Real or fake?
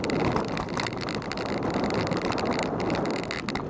real